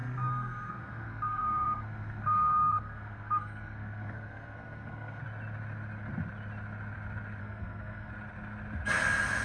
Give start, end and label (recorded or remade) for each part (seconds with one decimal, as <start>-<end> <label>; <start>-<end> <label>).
0.0-5.2 remade; 5.2-7.4 recorded; 7.4-8.1 remade; 8.1-9.4 recorded